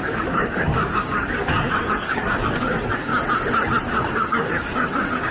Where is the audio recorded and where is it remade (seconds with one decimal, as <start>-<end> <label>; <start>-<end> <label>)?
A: 0.0-3.1 remade; 3.1-3.9 recorded; 3.9-5.3 remade